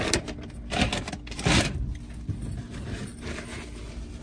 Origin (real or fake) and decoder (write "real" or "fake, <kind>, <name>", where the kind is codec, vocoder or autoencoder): real